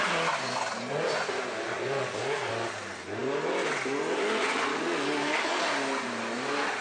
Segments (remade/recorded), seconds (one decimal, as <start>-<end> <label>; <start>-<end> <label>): 0.0-1.7 recorded; 1.7-2.5 remade; 2.5-4.7 recorded; 4.7-5.6 remade; 5.6-6.8 recorded